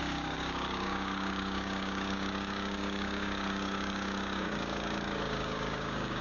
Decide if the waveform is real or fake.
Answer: fake